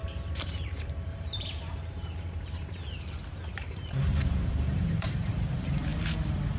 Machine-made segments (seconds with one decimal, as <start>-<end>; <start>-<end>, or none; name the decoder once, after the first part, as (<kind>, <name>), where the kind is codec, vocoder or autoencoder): 0.0-5.9 (vocoder, BigVGAN v2)